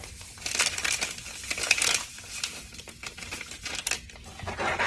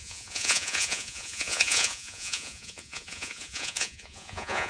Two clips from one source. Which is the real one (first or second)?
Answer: first